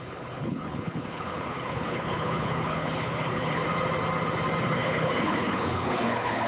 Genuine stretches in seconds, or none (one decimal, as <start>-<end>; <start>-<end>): 3.6-4.7